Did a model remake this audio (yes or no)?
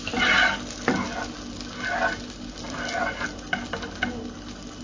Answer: no